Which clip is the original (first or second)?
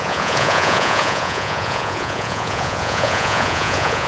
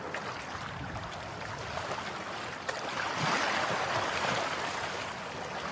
second